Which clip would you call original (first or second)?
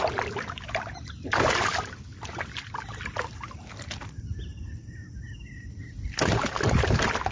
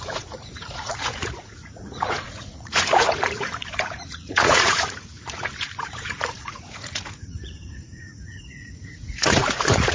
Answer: first